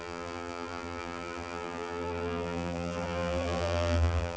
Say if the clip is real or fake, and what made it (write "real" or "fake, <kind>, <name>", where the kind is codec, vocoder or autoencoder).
fake, vocoder, BigVGAN v2